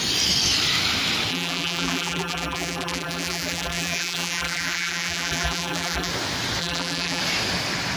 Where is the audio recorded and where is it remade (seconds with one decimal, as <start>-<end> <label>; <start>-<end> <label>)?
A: 0.0-1.3 recorded; 1.3-6.1 remade; 6.1-6.6 recorded; 6.6-7.2 remade; 7.2-8.0 recorded